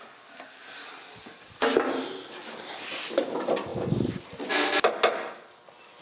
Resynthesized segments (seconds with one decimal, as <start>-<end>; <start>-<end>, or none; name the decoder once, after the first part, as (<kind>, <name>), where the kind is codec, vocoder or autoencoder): none